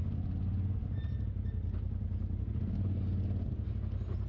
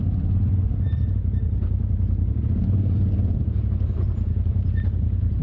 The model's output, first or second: second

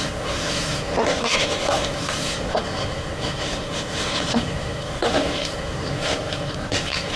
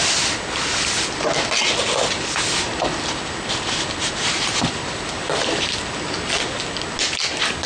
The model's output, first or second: first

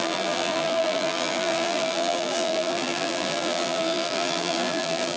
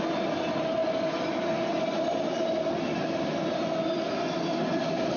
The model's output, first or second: first